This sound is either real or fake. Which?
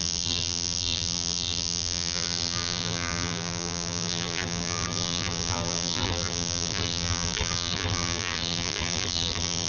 fake